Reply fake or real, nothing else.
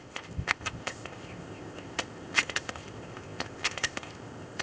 fake